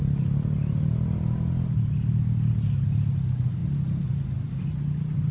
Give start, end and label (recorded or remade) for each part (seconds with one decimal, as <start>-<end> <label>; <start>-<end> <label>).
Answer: 0.0-5.3 recorded